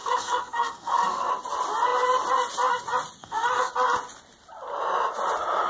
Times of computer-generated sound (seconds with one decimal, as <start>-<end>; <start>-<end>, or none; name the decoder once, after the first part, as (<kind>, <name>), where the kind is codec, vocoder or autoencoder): 0.0-1.3 (codec, SNAC); 3.2-3.7